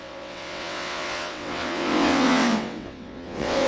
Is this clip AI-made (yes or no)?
yes